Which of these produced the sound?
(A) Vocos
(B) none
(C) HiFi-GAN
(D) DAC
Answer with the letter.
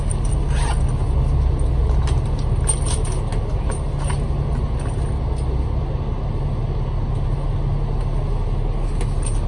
B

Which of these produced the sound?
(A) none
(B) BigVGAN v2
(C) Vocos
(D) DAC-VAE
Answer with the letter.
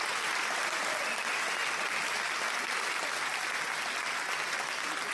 A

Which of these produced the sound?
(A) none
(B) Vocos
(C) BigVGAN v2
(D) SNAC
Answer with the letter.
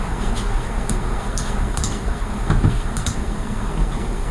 D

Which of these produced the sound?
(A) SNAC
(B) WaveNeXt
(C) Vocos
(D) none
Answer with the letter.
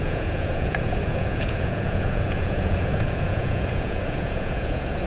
C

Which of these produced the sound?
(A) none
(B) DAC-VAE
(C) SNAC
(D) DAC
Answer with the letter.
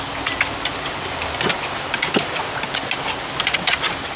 A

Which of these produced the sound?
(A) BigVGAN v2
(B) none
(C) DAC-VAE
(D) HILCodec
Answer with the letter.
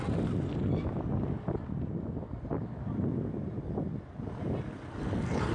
B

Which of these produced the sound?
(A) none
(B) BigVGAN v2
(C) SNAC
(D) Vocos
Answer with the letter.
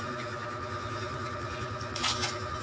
D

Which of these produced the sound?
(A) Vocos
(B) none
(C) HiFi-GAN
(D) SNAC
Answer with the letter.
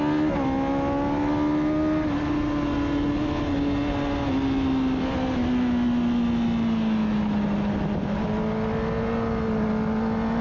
B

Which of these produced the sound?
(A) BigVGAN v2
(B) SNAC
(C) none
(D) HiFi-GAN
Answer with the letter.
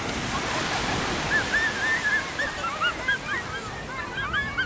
C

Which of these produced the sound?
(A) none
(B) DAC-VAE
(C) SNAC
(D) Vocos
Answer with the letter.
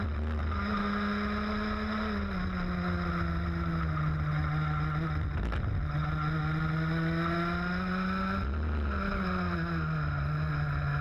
A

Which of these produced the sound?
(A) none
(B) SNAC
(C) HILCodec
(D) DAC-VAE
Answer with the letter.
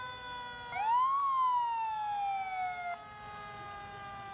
A